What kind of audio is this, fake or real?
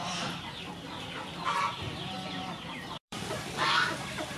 fake